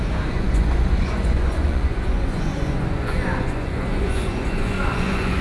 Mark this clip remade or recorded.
remade